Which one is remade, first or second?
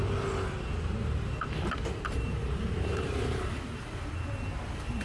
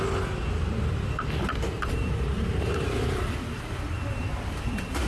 second